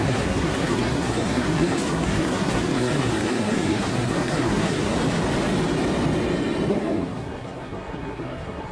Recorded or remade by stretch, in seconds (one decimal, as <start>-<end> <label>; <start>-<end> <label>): 0.0-5.0 remade; 5.0-6.7 recorded; 6.7-8.7 remade